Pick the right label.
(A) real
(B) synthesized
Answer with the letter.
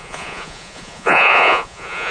B